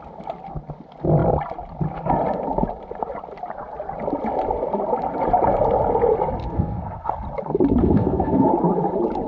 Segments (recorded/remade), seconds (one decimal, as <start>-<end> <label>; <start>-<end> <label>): 0.0-6.4 recorded; 6.4-7.1 remade; 7.1-7.8 recorded; 7.8-8.5 remade; 8.5-9.3 recorded